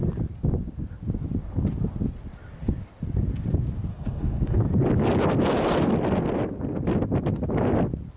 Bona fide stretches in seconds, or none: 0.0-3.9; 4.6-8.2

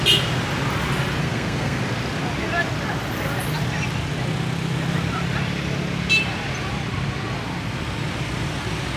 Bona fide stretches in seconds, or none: 0.0-1.2; 1.8-9.0